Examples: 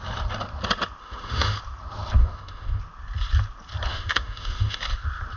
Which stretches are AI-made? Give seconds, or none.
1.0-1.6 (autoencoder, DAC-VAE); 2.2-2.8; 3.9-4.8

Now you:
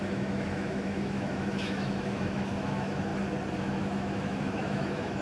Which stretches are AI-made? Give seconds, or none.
0.0-3.1 (autoencoder, DAC-VAE); 3.6-5.2

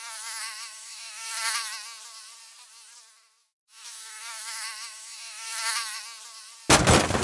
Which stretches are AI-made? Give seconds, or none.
0.4-1.7 (autoencoder, DAC-VAE); 3.4-6.0

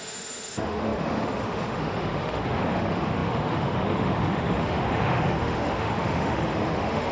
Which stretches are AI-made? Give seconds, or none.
0.0-7.1 (autoencoder, DAC-VAE)

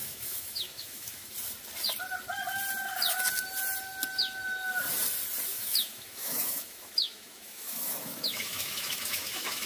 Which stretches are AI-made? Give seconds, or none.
0.0-1.3 (autoencoder, DAC-VAE); 5.5-9.7